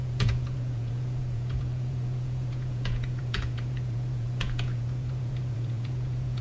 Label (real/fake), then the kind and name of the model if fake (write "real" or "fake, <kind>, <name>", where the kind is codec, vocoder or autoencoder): fake, vocoder, Vocos